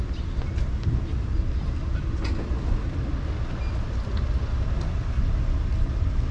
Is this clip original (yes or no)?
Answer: yes